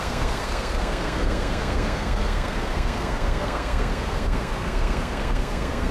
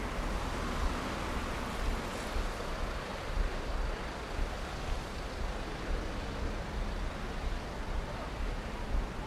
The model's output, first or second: first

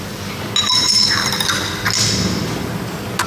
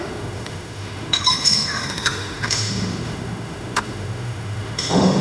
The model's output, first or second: second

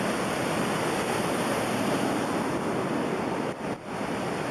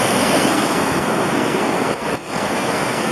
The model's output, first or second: second